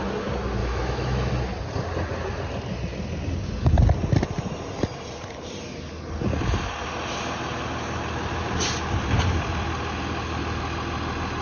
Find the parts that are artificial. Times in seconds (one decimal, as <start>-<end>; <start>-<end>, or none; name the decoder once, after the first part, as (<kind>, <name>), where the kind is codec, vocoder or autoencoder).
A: 0.6-1.3 (autoencoder, DAC-VAE)